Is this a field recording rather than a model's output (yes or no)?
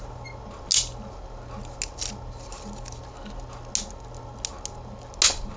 yes